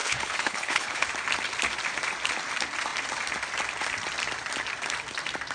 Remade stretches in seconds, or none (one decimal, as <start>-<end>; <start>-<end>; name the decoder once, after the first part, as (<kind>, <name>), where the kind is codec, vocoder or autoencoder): 0.0-1.0 (codec, HILCodec)